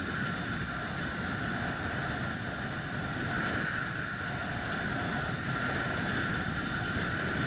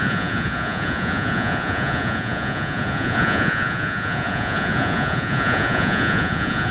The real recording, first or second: first